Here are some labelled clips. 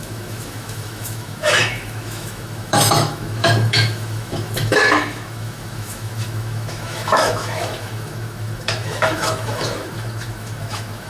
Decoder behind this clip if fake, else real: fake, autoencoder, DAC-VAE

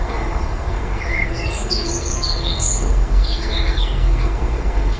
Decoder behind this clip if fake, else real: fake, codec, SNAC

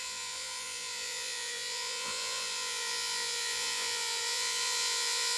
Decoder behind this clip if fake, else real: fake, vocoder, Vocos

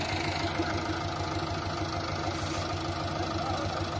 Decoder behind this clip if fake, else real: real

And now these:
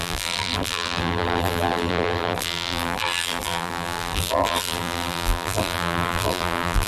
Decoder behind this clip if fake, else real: fake, vocoder, BigVGAN v2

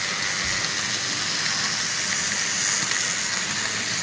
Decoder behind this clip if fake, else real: real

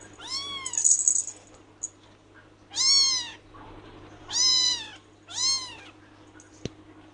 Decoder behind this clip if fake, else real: real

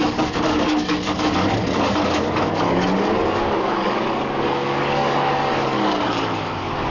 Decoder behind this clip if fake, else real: fake, codec, DAC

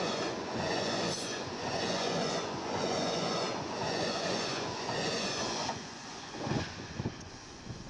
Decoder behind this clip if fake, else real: fake, vocoder, Vocos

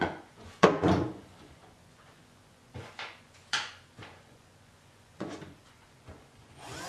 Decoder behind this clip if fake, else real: fake, vocoder, Vocos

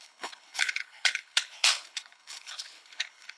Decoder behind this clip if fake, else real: fake, codec, HILCodec